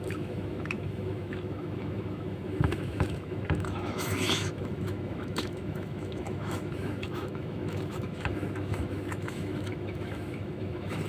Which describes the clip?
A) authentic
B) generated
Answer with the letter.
B